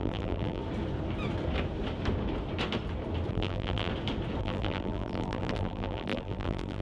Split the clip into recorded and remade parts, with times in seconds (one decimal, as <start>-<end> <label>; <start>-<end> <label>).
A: 0.0-0.6 remade; 0.6-3.3 recorded; 3.3-3.9 remade; 3.9-4.4 recorded; 4.4-6.8 remade